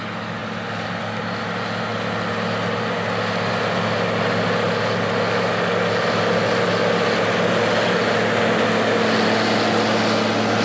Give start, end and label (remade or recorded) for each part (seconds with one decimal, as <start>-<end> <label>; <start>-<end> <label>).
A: 0.0-10.6 recorded